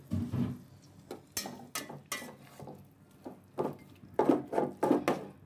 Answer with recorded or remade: recorded